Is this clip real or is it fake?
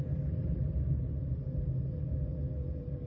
real